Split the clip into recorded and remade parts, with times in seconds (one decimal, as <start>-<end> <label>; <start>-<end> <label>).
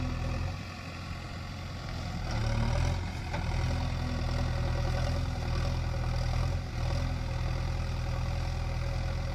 0.0-9.3 recorded